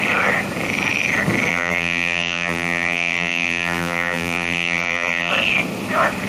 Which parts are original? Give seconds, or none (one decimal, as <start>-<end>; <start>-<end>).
0.0-1.5; 5.3-6.3